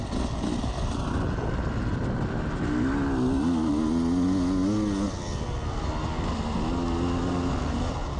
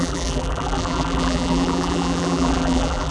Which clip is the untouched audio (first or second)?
first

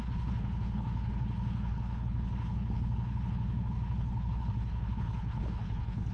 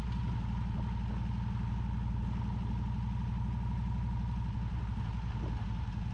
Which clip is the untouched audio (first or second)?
second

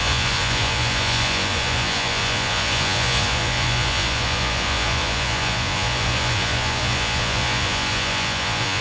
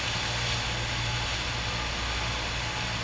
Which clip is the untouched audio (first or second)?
second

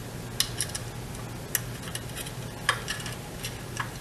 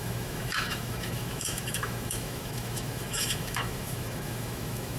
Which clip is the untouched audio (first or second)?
first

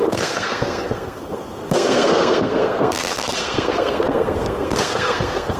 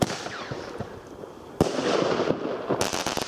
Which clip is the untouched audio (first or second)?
second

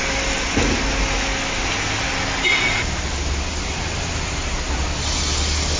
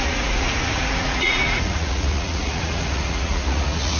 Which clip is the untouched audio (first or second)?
first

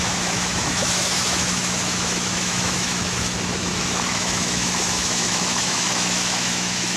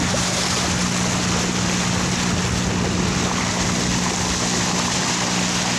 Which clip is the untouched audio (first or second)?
second